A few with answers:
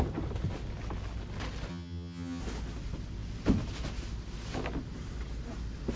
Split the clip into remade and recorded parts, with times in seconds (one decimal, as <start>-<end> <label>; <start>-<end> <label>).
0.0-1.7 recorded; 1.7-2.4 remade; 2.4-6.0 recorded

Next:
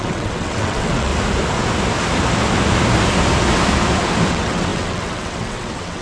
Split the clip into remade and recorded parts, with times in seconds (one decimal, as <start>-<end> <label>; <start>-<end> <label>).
0.0-1.1 remade; 1.1-4.3 recorded; 4.3-6.0 remade

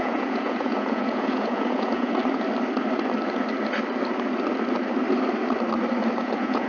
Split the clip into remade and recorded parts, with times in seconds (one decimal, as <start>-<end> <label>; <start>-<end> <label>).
0.0-2.2 remade; 2.2-6.2 recorded; 6.2-6.7 remade

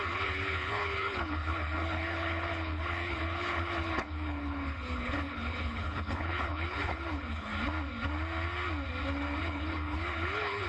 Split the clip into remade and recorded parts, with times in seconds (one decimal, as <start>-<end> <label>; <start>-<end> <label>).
0.0-7.5 remade; 7.5-9.4 recorded; 9.4-10.7 remade